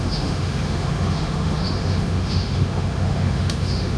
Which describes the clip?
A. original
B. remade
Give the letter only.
B